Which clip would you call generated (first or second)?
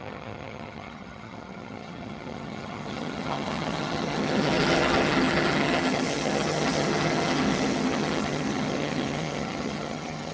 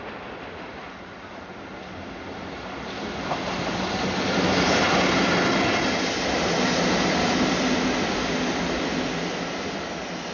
first